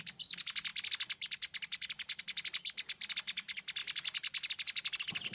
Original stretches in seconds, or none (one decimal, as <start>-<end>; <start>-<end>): 0.0-5.3